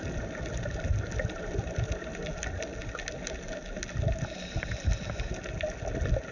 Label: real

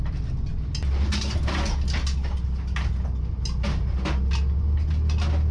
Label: real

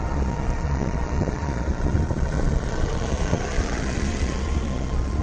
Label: fake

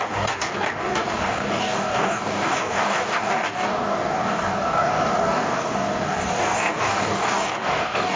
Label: fake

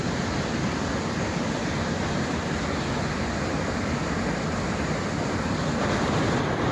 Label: real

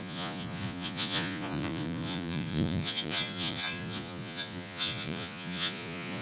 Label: fake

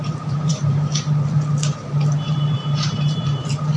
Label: fake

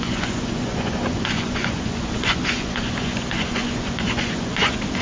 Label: fake